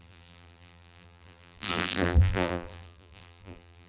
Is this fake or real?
fake